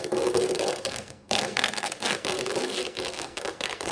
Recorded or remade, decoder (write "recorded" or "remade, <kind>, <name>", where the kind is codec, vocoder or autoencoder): remade, codec, SNAC